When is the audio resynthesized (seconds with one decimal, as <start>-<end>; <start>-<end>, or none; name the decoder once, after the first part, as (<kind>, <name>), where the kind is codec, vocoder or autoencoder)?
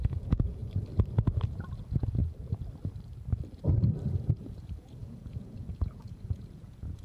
0.0-0.6 (vocoder, Vocos); 1.8-2.2; 4.2-7.0